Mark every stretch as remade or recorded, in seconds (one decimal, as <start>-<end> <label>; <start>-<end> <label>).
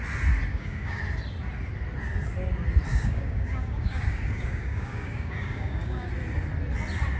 0.0-0.5 recorded; 0.5-1.0 remade; 1.0-2.9 recorded; 2.9-6.1 remade; 6.1-7.2 recorded